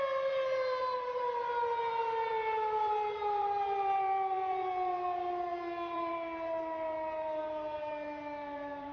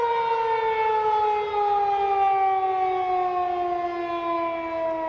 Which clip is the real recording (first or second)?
second